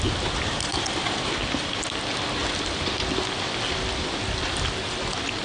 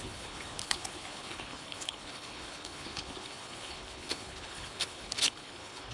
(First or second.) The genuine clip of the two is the first